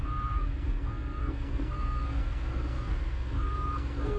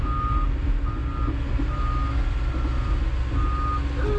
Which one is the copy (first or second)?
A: first